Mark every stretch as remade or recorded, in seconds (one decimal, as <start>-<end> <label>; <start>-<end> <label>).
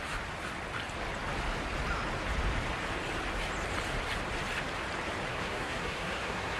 0.0-5.3 recorded; 5.3-6.6 remade